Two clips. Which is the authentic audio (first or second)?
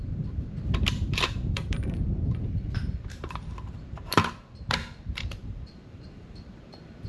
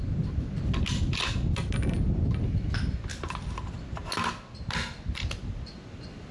second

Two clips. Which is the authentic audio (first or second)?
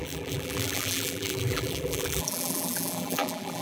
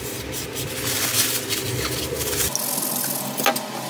second